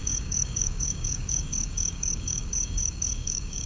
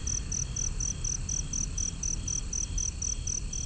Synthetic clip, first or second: first